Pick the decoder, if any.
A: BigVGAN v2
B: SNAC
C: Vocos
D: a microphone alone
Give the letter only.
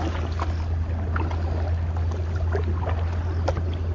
D